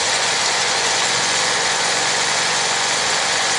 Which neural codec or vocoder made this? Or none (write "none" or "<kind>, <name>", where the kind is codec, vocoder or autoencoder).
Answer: vocoder, Vocos